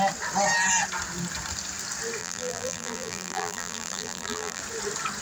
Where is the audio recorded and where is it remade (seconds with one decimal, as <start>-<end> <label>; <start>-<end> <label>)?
0.0-2.2 recorded; 2.2-4.6 remade; 4.6-5.2 recorded